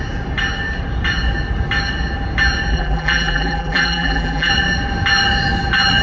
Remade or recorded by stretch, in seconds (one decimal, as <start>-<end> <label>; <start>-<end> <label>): 0.0-2.7 recorded; 2.7-4.5 remade; 4.5-6.0 recorded